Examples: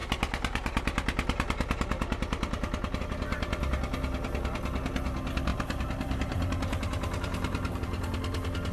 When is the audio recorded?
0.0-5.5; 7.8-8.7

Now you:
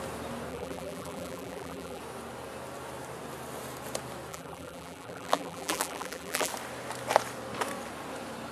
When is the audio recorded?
0.0-0.5; 2.0-4.3; 6.5-8.5

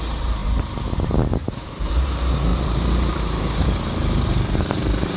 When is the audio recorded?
none

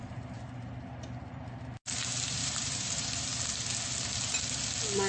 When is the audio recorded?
0.0-2.4; 3.2-5.1